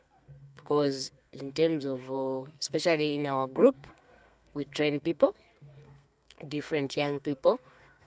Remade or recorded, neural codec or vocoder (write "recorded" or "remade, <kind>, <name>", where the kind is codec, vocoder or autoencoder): remade, codec, SNAC